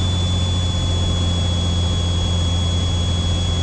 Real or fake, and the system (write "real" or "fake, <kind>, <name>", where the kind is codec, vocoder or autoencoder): real